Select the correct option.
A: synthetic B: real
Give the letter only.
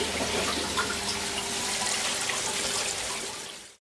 B